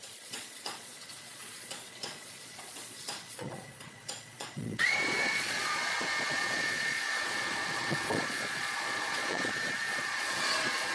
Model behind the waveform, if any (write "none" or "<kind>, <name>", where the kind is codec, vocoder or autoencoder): vocoder, Vocos